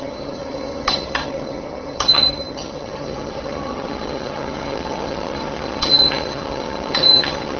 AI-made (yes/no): yes